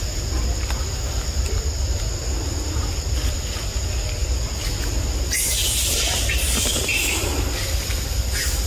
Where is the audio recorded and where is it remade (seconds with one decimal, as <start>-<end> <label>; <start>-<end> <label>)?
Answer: 0.0-8.7 recorded